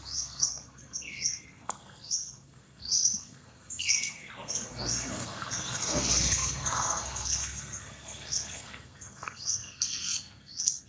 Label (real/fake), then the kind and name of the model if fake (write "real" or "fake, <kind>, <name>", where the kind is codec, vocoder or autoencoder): fake, codec, SNAC